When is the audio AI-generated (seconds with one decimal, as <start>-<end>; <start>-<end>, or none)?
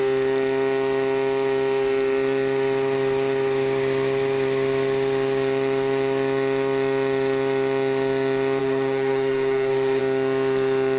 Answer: 8.6-10.0